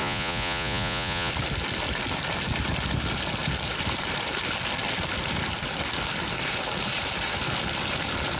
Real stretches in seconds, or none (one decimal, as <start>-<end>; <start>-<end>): 1.3-8.4